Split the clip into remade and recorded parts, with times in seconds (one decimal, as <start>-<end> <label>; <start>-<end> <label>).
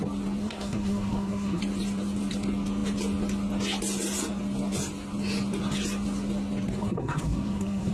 0.0-0.4 recorded; 0.4-1.6 remade; 1.6-6.8 recorded; 6.8-7.9 remade